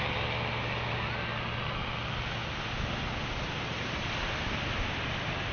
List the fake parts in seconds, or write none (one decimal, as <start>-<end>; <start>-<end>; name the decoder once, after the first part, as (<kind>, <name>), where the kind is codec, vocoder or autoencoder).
none